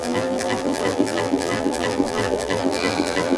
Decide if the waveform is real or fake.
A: fake